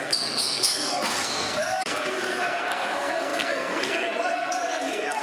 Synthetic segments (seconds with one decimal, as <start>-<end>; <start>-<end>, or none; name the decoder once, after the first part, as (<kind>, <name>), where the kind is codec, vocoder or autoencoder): 0.0-5.2 (codec, SNAC)